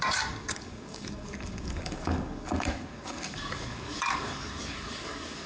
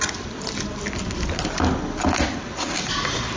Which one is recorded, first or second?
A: second